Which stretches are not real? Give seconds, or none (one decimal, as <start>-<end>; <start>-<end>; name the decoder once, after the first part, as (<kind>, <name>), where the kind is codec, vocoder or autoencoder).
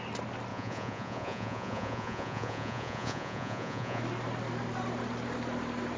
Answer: 0.5-4.0 (vocoder, Vocos)